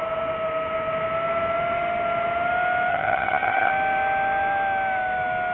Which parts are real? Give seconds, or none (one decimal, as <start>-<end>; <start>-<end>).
0.0-2.9; 3.7-5.5